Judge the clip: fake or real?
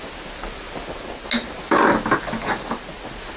real